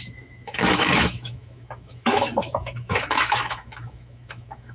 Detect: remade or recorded remade